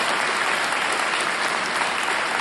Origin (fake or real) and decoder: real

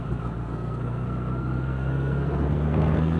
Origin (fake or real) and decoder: fake, codec, SNAC